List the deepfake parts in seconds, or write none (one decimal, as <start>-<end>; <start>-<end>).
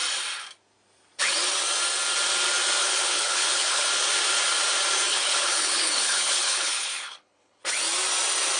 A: 2.8-3.9; 5.1-7.6